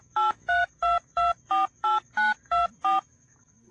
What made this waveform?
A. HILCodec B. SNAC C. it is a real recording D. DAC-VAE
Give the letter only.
D